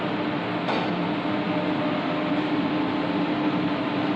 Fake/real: real